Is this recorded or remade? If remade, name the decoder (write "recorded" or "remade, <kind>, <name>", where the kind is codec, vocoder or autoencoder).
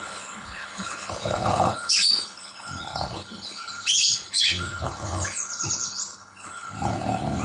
remade, codec, HILCodec